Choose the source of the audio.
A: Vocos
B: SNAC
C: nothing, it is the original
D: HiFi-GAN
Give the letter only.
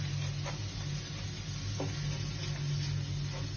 C